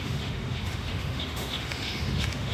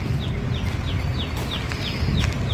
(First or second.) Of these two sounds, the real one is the second